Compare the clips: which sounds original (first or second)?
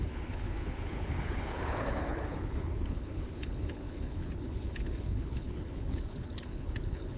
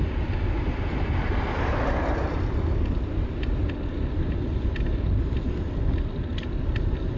second